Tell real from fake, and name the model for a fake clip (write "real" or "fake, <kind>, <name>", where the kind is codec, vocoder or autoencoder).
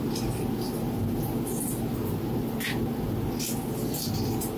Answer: real